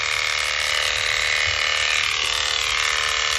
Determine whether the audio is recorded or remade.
recorded